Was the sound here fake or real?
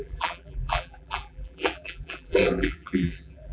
fake